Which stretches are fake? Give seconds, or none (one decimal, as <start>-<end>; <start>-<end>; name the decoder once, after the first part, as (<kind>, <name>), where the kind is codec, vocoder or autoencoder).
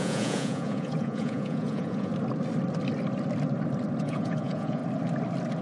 0.0-2.1 (vocoder, Vocos); 4.0-4.8